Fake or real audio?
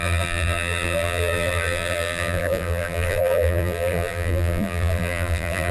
fake